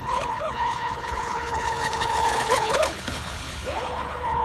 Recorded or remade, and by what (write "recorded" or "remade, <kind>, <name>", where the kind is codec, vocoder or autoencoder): remade, codec, HILCodec